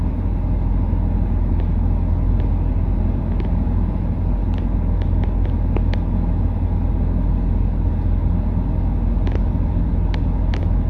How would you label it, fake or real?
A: real